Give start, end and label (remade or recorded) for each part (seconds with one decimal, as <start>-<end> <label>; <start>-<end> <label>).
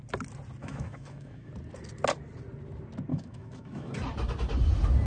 0.0-0.6 recorded; 0.6-1.5 remade; 1.5-3.1 recorded; 3.1-3.9 remade; 3.9-5.1 recorded